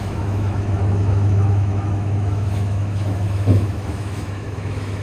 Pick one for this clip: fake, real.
fake